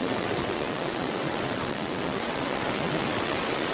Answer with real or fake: fake